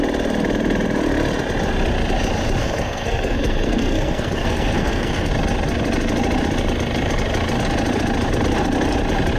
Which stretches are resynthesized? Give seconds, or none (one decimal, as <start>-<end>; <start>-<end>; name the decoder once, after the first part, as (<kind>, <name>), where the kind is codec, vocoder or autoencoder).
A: 2.6-5.3 (codec, SNAC)